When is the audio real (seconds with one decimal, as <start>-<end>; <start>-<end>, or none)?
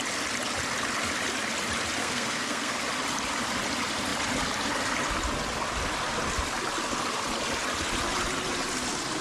0.0-2.0; 2.8-9.2